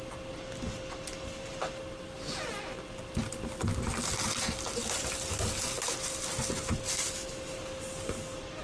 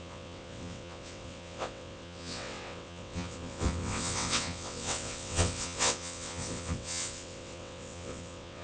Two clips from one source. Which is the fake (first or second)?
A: second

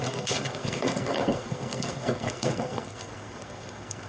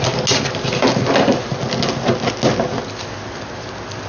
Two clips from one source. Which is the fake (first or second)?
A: first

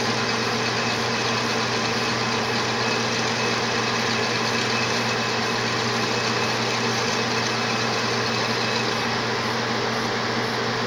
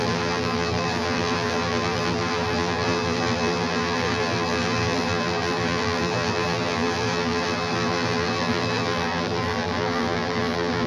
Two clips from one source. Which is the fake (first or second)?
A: second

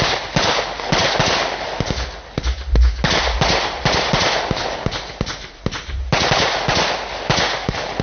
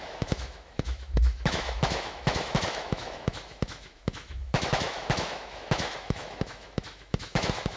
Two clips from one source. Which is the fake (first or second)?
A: second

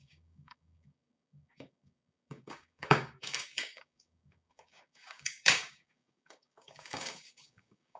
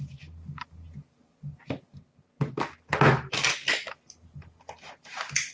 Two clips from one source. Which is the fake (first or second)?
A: first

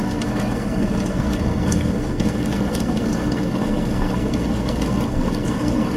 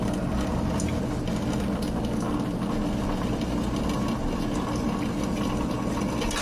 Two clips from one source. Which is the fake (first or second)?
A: first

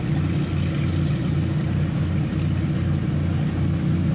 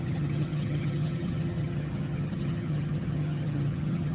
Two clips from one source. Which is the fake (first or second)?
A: second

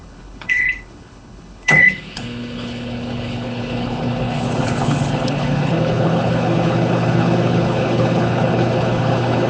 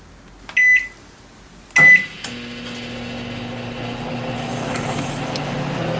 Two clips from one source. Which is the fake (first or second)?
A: first